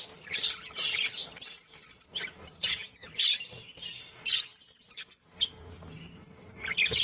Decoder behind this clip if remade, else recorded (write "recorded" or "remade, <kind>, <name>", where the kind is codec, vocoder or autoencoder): remade, vocoder, BigVGAN v2